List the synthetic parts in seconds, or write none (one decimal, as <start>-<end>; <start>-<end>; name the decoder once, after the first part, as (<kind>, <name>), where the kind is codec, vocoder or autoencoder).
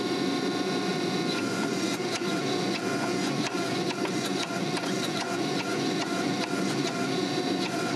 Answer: 0.0-8.0 (vocoder, Vocos)